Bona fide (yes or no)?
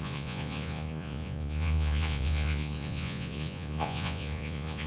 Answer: no